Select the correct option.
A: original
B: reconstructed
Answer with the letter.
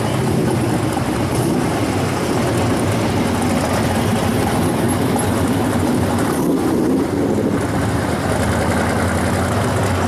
A